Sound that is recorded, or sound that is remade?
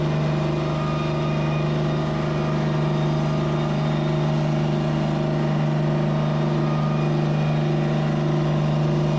recorded